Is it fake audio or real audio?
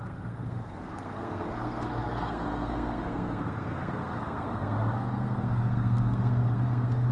fake